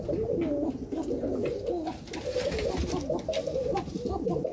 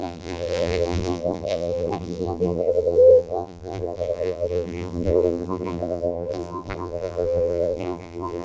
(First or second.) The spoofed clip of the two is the second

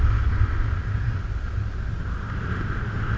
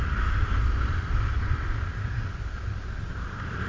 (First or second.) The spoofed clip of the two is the second